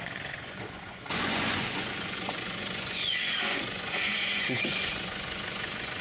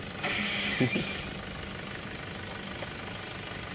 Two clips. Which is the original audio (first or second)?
second